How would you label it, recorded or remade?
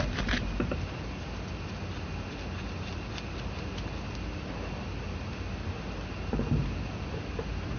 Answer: recorded